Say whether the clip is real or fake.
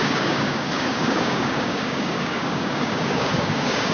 fake